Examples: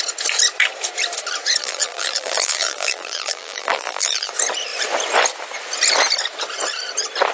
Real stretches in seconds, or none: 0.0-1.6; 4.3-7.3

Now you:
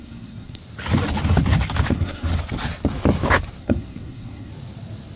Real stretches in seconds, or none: 0.6-1.9; 2.3-3.6; 4.5-5.2

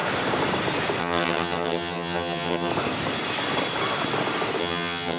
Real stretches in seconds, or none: 0.0-1.0; 2.7-4.6

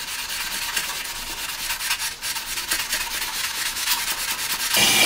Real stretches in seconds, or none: 0.0-3.3; 4.0-5.1

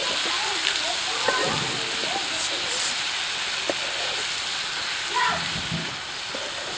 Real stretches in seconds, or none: 0.0-6.8

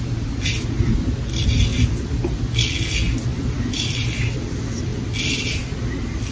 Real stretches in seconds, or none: 0.0-3.3; 4.2-6.3